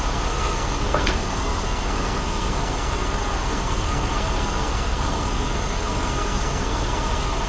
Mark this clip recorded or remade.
remade